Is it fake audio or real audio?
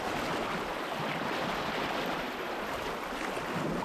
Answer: real